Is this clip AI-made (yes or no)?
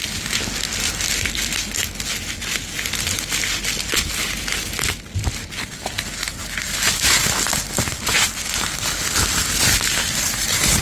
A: no